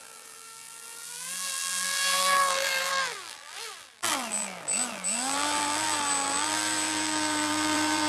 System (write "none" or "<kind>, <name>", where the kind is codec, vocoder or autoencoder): vocoder, BigVGAN v2